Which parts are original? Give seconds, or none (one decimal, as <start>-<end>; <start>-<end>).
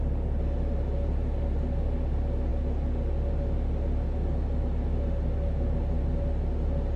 0.0-7.0